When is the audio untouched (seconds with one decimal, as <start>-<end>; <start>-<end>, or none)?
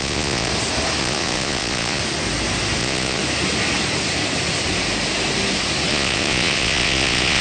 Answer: 0.5-1.0; 2.0-2.8; 3.2-5.9